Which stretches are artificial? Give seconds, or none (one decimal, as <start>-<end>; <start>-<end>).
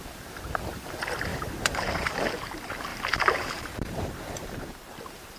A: 1.3-2.4; 2.9-4.8